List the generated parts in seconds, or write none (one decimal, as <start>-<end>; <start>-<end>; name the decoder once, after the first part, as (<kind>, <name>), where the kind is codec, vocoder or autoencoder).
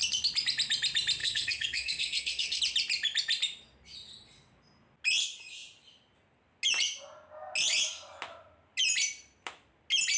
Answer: 1.2-2.6 (codec, SNAC)